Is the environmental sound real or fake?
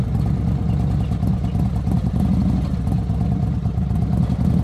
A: real